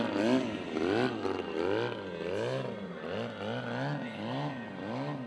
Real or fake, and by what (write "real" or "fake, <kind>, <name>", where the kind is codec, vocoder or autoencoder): real